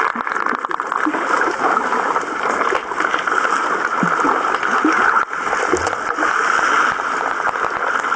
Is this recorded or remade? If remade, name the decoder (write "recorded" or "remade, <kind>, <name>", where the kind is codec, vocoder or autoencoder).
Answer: recorded